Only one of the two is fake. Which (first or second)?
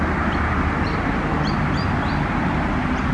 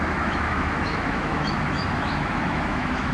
second